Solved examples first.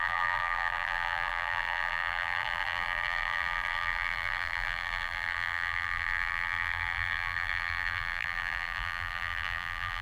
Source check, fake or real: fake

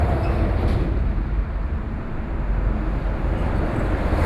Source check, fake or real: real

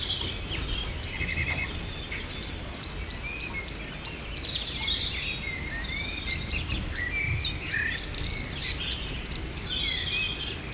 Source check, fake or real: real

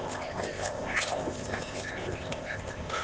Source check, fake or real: fake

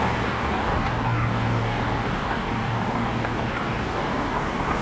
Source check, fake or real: fake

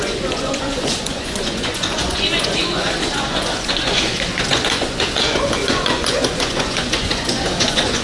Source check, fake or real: fake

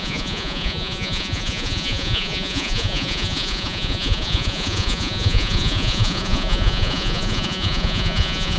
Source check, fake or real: fake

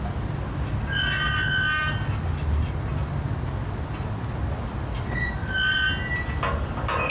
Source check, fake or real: real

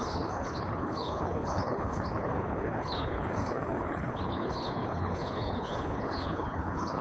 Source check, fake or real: fake